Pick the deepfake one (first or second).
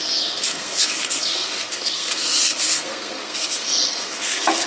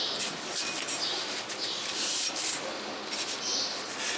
first